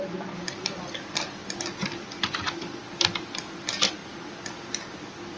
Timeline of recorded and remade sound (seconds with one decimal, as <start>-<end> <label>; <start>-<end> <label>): 0.0-1.4 remade; 1.4-2.0 recorded; 2.0-2.8 remade; 2.8-3.4 recorded; 3.4-4.0 remade; 4.0-5.4 recorded